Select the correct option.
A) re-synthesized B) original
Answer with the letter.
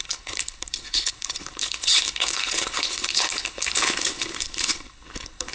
A